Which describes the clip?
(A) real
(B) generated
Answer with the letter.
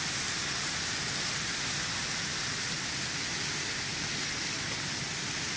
A